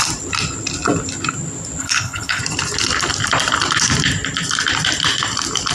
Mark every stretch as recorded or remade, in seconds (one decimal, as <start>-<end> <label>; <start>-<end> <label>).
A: 0.0-1.8 recorded; 1.8-2.4 remade; 2.4-5.7 recorded

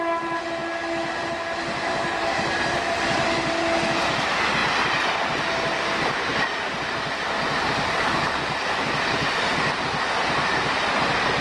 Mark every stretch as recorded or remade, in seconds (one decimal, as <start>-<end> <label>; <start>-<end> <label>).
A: 0.0-11.4 recorded

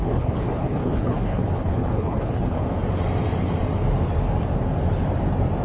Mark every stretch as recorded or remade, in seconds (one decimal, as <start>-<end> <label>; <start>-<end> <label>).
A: 0.0-2.6 remade; 2.6-5.6 recorded